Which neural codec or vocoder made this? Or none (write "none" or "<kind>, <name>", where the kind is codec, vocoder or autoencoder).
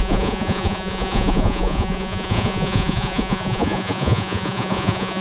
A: vocoder, Vocos